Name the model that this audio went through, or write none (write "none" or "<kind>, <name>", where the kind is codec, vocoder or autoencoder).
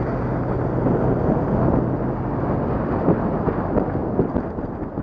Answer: none